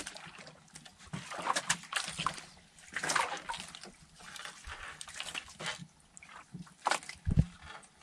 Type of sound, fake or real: real